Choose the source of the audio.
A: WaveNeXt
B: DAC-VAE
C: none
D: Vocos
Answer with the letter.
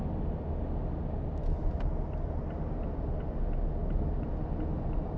C